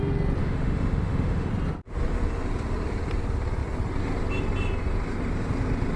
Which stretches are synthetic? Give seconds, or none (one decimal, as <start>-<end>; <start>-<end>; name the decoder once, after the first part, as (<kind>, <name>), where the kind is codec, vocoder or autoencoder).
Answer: 0.4-1.5 (autoencoder, DAC-VAE)